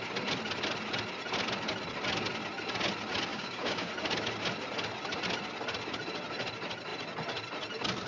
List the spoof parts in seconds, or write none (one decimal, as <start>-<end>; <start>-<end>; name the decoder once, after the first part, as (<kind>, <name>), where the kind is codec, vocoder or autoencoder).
3.3-3.9 (codec, DAC)